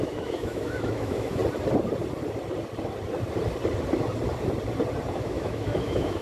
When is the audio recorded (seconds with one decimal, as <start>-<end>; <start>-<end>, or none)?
1.4-5.1